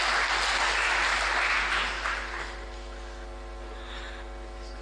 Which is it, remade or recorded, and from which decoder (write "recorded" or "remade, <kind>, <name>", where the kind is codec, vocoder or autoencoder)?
recorded